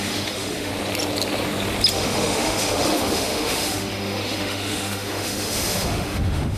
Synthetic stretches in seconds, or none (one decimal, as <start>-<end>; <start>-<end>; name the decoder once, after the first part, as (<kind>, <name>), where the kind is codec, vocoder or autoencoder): 0.0-0.7 (autoencoder, DAC-VAE); 1.9-6.6